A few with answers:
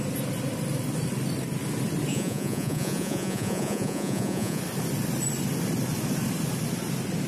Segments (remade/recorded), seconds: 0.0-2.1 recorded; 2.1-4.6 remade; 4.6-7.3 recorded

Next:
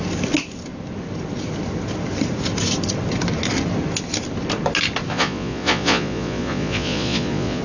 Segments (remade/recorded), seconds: 0.0-5.1 recorded; 5.1-7.6 remade

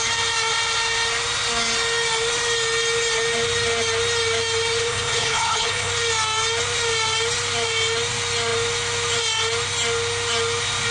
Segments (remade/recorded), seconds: 0.0-4.8 recorded; 4.8-5.9 remade; 5.9-10.9 recorded

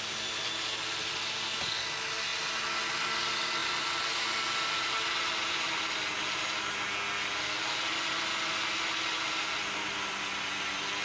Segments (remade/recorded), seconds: 0.0-11.0 recorded